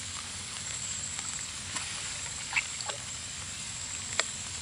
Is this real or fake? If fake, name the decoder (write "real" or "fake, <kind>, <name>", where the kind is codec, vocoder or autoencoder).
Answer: fake, codec, DAC